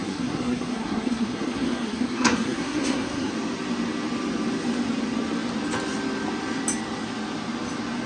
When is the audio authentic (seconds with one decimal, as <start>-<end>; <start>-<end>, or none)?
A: 3.3-8.1